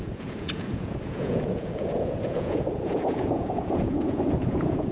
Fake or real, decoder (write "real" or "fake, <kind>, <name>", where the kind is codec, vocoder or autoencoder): fake, vocoder, Vocos